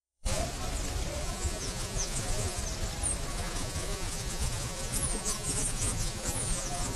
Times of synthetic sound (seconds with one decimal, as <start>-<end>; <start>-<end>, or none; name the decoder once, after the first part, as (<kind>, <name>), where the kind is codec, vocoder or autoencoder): 0.0-0.4 (vocoder, Vocos); 1.2-2.6; 3.3-7.0